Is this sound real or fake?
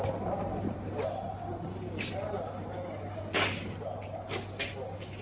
real